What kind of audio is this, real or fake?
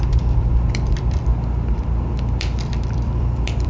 fake